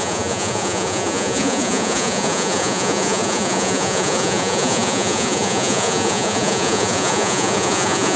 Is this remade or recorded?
remade